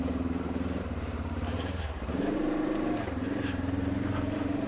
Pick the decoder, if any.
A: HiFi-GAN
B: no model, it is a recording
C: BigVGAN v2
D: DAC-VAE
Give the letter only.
C